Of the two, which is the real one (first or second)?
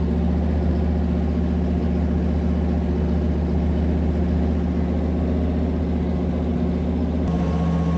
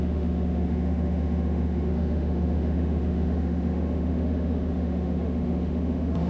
first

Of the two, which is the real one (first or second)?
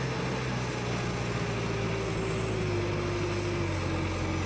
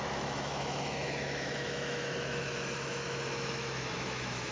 first